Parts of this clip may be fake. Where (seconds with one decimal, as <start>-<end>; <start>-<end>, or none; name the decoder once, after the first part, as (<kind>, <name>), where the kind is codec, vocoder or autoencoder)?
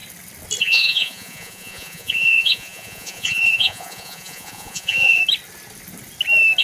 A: 0.6-5.2 (vocoder, Vocos)